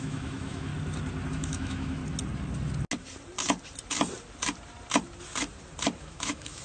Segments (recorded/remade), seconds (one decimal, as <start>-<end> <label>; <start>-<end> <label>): 0.0-0.7 remade; 0.7-1.3 recorded; 1.3-2.0 remade; 2.0-6.0 recorded; 6.0-6.6 remade